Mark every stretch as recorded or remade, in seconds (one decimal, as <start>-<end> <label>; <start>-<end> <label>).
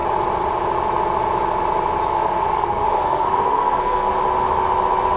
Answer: 0.0-2.1 recorded; 2.1-4.1 remade; 4.1-5.2 recorded